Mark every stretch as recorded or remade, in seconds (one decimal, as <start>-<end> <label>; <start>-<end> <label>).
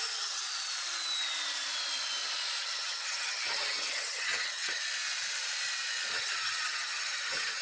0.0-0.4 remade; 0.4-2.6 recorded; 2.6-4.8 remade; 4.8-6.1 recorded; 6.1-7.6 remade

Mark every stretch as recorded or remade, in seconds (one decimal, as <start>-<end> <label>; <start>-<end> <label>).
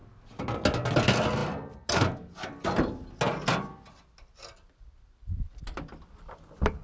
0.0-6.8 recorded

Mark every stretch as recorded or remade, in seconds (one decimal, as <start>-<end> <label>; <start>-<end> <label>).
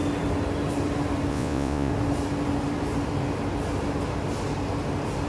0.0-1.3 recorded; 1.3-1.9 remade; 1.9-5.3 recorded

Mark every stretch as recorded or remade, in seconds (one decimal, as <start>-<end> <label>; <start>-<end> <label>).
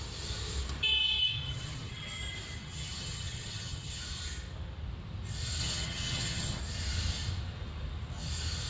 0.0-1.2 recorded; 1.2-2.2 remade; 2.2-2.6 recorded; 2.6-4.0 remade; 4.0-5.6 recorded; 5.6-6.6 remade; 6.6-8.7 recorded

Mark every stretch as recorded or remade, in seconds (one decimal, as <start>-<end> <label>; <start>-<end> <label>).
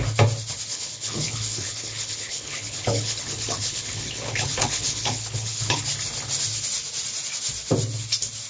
0.0-0.7 recorded; 0.7-5.8 remade; 5.8-8.5 recorded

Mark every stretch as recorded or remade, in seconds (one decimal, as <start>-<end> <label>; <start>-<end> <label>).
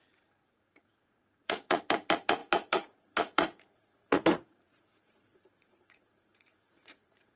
0.0-7.4 remade